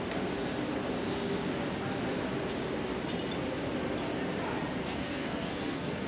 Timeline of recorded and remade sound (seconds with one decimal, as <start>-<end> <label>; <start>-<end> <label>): 0.0-4.8 recorded; 4.8-6.1 remade